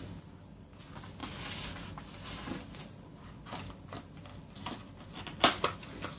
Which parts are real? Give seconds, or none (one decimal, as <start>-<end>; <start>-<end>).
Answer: 0.0-6.2